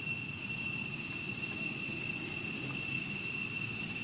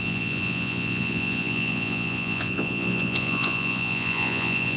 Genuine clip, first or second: first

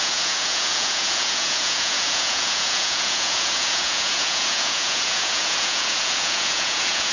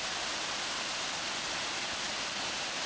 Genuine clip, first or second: second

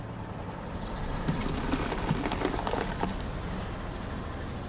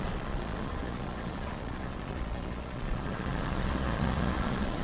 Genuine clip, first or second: first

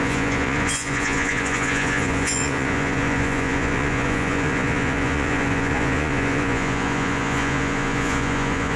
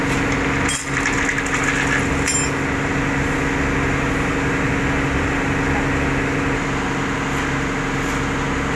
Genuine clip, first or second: second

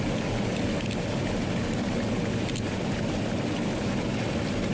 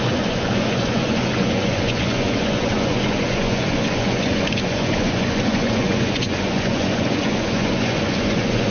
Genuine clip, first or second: first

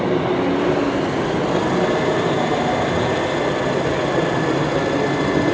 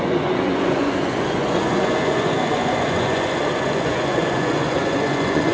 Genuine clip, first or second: first